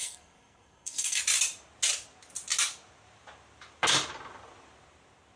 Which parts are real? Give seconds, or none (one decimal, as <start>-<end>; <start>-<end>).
1.2-5.4